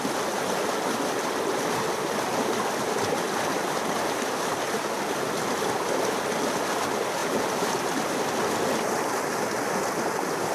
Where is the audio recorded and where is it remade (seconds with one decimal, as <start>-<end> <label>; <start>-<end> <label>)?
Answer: 0.0-7.2 recorded; 7.2-7.9 remade; 7.9-10.5 recorded